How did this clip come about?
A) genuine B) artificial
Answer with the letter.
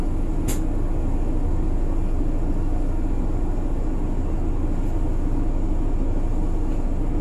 A